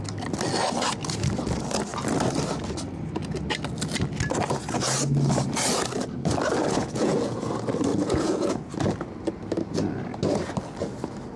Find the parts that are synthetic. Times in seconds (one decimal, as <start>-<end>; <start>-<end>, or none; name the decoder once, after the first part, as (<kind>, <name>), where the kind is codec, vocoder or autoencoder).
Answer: 6.8-7.5 (vocoder, Vocos); 7.9-8.7